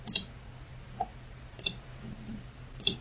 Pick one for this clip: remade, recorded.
recorded